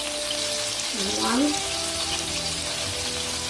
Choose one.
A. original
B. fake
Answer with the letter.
A